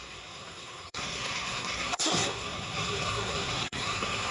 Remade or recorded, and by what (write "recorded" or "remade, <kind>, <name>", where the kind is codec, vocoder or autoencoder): remade, codec, SNAC